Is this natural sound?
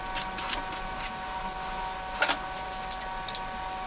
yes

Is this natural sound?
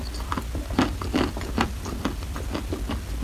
yes